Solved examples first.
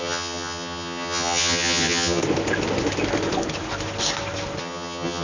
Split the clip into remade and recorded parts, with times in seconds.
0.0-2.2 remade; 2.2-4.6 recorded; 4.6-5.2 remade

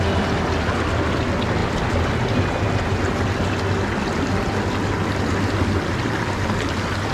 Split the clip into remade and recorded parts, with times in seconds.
0.0-7.1 recorded

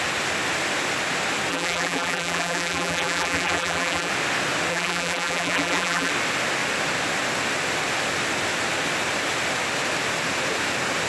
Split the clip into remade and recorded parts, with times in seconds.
0.0-1.5 recorded; 1.5-4.1 remade; 4.1-4.7 recorded; 4.7-6.1 remade; 6.1-11.1 recorded

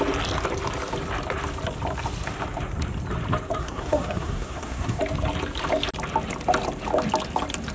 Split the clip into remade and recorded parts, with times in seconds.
0.0-3.6 recorded; 3.6-5.0 remade; 5.0-7.7 recorded

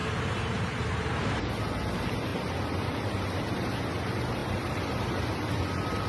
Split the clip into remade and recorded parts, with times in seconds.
0.0-2.3 recorded; 2.3-3.2 remade; 3.2-4.4 recorded; 4.4-5.2 remade; 5.2-6.1 recorded